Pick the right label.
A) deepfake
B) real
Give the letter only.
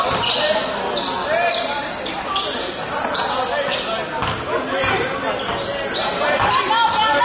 B